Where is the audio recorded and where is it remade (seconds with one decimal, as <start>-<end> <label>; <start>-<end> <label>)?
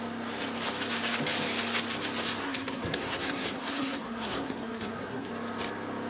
0.0-2.4 recorded; 2.4-5.3 remade; 5.3-6.1 recorded